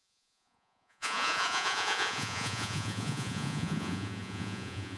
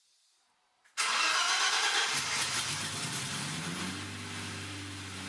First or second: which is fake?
first